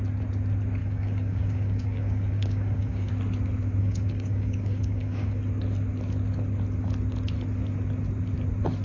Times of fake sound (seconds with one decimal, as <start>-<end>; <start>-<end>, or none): 0.8-3.1; 3.8-5.4

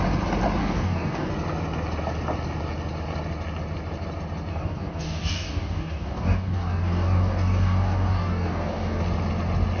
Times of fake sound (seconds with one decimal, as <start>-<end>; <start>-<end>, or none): 0.6-1.3; 4.5-9.0

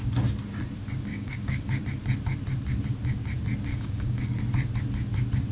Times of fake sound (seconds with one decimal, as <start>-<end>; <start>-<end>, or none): 1.1-1.8; 3.7-4.4